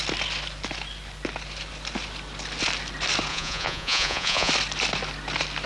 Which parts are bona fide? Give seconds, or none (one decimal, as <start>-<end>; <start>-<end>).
0.0-3.3; 4.5-5.7